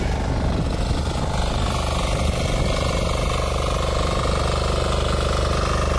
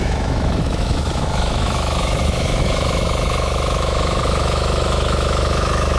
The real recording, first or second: first